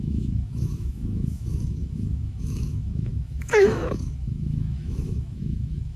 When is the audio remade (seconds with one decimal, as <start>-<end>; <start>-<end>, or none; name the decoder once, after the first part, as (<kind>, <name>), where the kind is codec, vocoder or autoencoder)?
0.0-6.0 (autoencoder, DAC-VAE)